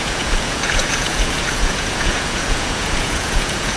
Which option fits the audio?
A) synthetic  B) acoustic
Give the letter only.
A